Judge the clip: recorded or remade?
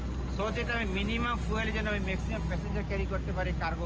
recorded